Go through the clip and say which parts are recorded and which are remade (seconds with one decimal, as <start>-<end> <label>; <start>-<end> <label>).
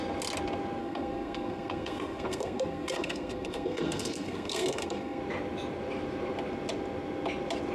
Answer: 0.0-0.8 recorded; 0.8-5.2 remade; 5.2-7.7 recorded